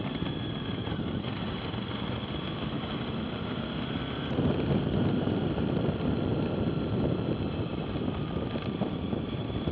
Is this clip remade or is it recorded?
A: recorded